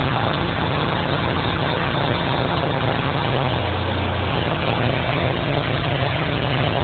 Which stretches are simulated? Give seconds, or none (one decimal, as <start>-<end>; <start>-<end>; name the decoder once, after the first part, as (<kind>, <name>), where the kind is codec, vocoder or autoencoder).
0.0-3.6 (vocoder, HiFi-GAN); 4.3-6.8